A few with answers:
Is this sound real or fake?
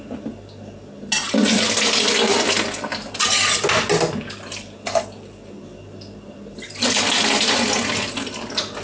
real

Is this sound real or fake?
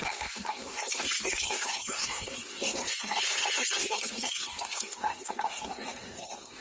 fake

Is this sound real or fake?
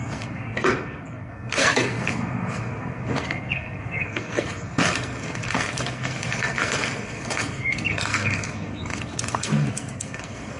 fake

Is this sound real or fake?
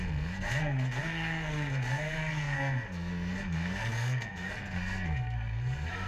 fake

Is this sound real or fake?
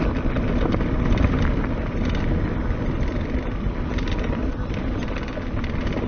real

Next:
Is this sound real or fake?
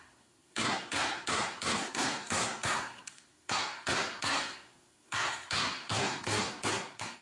fake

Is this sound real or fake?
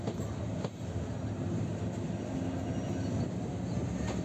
real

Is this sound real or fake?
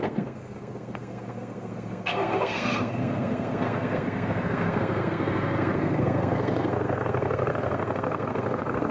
fake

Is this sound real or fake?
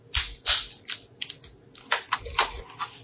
real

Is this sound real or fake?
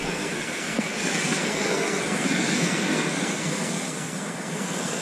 fake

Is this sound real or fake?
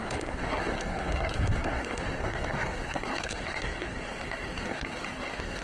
fake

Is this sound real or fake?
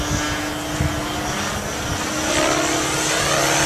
real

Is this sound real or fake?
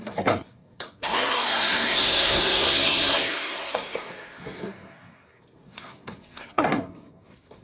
fake